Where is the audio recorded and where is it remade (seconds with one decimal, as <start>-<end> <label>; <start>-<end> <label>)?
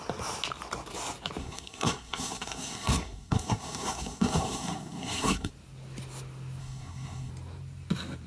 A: 0.0-1.4 recorded; 1.4-5.5 remade; 5.5-6.6 recorded; 6.6-7.3 remade; 7.3-8.3 recorded